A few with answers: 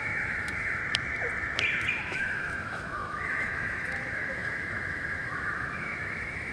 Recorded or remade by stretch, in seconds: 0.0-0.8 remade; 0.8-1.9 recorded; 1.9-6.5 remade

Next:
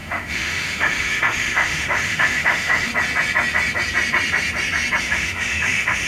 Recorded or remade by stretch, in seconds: 0.0-2.9 remade; 2.9-5.0 recorded; 5.0-6.1 remade

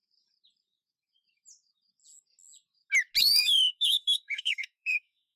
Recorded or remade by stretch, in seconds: 0.0-3.2 recorded; 3.2-5.4 remade

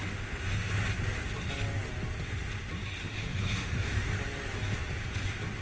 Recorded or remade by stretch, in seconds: 0.0-0.7 remade; 0.7-3.0 recorded; 3.0-4.1 remade; 4.1-5.6 recorded

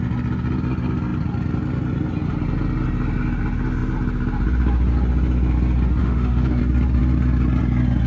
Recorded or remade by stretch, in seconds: 0.0-6.0 recorded; 6.0-6.6 remade; 6.6-8.1 recorded

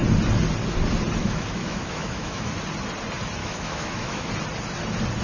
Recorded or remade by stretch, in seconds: 0.0-1.2 recorded; 1.2-2.5 remade; 2.5-3.4 recorded; 3.4-4.3 remade; 4.3-5.2 recorded

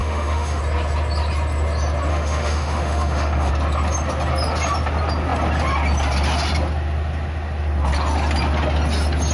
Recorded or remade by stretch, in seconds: 0.0-0.6 remade; 0.6-2.1 recorded; 2.1-3.5 remade; 3.5-9.3 recorded